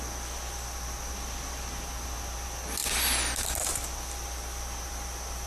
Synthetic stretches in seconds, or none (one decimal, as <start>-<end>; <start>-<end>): none